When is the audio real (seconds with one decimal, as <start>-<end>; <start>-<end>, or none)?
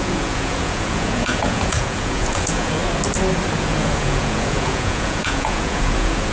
2.8-3.6